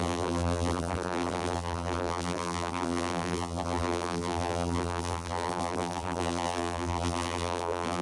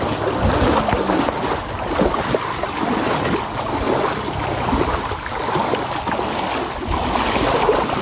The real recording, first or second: second